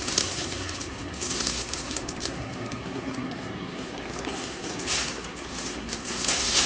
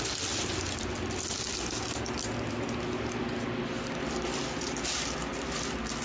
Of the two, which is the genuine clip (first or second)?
second